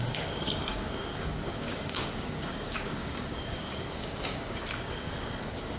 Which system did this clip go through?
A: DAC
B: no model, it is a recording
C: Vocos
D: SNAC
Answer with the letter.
A